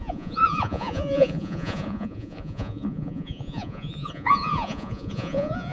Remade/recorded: remade